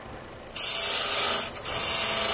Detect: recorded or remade recorded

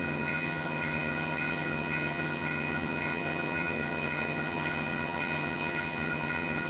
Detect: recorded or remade remade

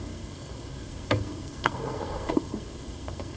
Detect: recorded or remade remade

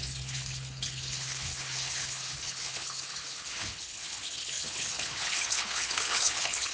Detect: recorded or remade remade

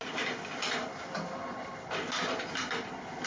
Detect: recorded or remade recorded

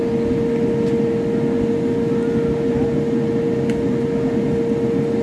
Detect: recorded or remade recorded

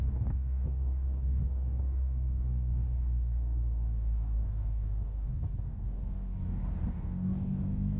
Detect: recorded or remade remade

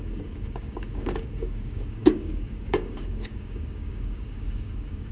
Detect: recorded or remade remade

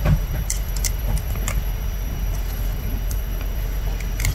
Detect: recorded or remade remade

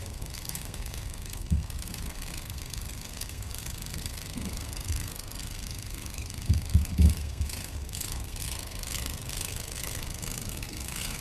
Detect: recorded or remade remade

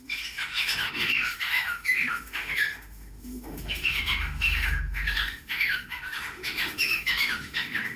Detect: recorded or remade remade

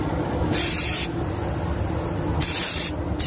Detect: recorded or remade recorded